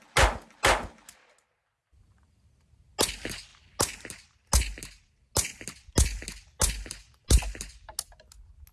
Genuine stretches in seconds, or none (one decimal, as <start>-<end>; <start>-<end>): 0.0-8.7